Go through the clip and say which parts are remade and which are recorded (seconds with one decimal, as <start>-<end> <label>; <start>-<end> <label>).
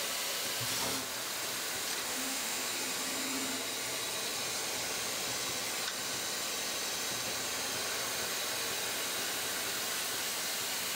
0.0-2.1 recorded; 2.1-2.7 remade; 2.7-11.0 recorded